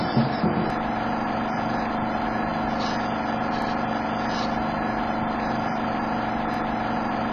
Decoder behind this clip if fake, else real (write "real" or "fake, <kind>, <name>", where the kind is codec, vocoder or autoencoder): real